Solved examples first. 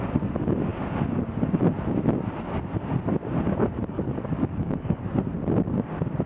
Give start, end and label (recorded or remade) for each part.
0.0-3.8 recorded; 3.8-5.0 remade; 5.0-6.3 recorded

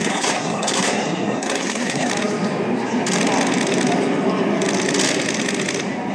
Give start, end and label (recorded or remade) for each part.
0.0-2.1 remade; 2.1-6.1 recorded

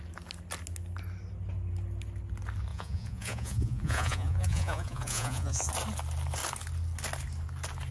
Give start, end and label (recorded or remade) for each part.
0.0-2.7 recorded; 2.7-5.7 remade; 5.7-7.9 recorded

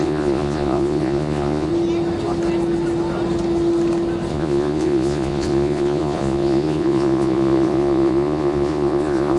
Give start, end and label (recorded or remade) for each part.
0.0-1.7 remade; 1.7-4.3 recorded; 4.3-9.4 remade

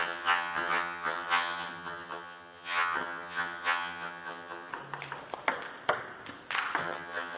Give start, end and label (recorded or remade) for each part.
0.0-4.7 remade; 4.7-6.8 recorded; 6.8-7.4 remade

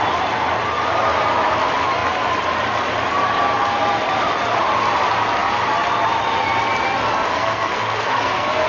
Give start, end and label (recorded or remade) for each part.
0.0-7.3 recorded; 7.3-8.7 remade

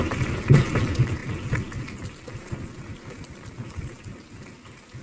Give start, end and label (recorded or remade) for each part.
0.0-5.0 recorded